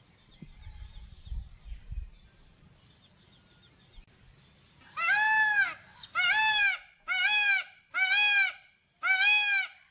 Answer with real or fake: real